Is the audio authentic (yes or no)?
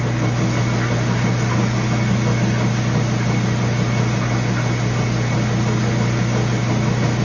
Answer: yes